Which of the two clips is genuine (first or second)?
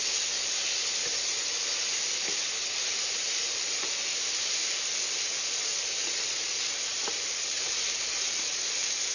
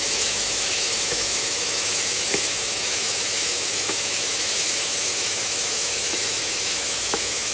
first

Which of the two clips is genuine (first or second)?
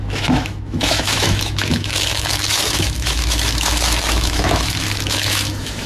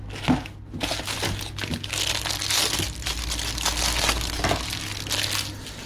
second